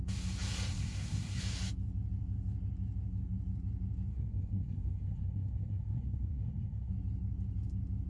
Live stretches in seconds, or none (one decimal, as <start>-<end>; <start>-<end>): 0.0-0.7; 1.4-4.1; 6.9-8.1